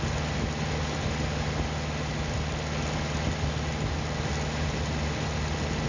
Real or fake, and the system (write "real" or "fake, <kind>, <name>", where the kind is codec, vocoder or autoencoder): real